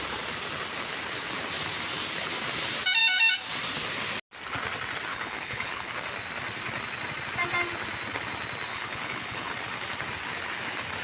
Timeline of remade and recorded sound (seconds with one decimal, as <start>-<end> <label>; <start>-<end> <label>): 0.0-5.1 recorded; 5.1-5.9 remade; 5.9-8.7 recorded; 8.7-9.5 remade; 9.5-11.0 recorded